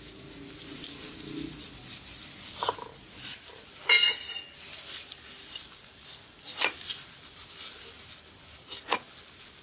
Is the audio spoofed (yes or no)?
no